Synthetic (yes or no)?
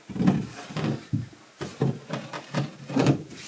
no